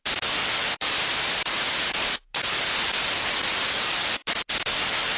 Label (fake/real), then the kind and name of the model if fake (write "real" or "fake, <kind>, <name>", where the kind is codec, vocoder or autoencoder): real